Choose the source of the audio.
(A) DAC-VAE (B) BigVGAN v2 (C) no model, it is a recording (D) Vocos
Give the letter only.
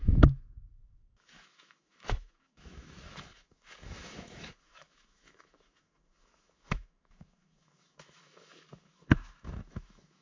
A